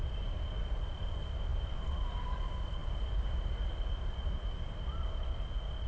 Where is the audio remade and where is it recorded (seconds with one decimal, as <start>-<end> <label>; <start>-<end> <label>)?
0.0-5.9 recorded